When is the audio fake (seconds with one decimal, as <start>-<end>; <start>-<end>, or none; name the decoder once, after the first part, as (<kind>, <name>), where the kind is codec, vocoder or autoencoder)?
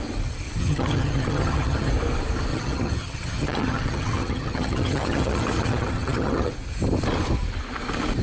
0.6-1.9 (vocoder, HiFi-GAN); 2.5-6.5